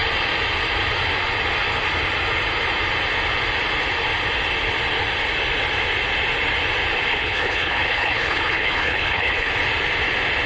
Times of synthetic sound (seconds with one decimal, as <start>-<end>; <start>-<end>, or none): 7.1-9.5